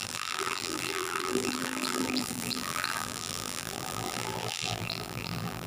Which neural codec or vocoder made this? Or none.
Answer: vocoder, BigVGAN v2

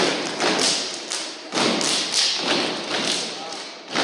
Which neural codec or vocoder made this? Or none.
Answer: none